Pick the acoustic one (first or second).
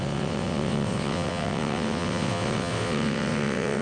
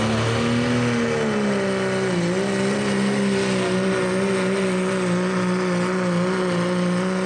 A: second